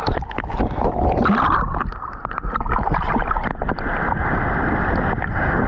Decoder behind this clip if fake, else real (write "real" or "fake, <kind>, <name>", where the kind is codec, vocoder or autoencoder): real